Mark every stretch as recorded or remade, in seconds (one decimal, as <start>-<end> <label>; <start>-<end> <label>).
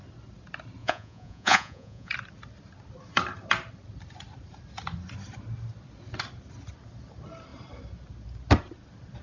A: 0.0-0.8 recorded; 0.8-2.1 remade; 2.1-9.2 recorded